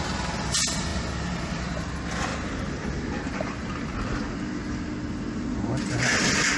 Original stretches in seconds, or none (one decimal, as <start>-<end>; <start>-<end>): 0.0-6.6